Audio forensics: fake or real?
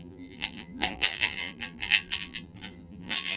fake